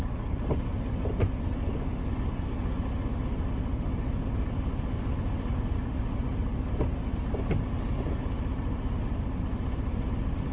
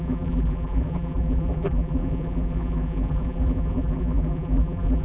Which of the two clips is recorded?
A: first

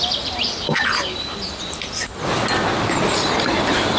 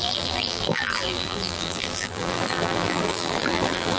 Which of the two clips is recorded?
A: first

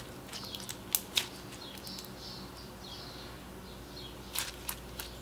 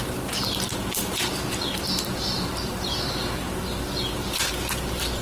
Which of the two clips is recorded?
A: first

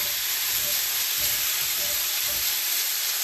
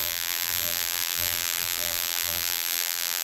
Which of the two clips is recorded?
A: first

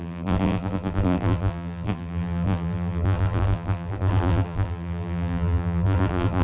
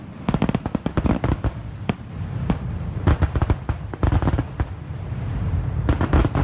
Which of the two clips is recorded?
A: second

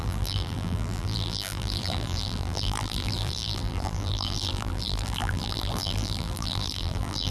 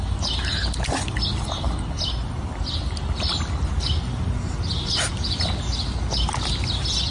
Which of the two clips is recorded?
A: second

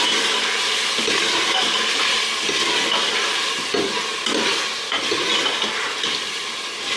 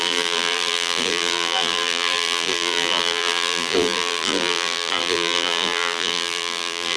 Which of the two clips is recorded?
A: first